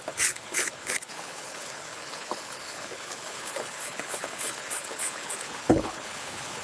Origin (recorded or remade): remade